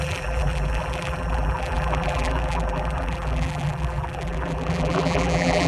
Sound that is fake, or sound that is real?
fake